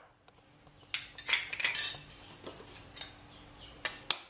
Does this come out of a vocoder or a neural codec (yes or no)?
no